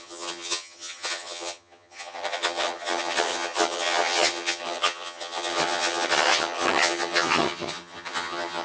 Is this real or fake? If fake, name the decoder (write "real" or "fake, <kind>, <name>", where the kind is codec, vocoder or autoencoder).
fake, vocoder, HiFi-GAN